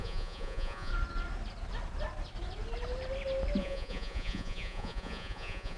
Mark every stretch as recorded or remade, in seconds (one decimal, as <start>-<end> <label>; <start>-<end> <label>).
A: 0.0-0.9 remade; 0.9-3.6 recorded; 3.6-5.8 remade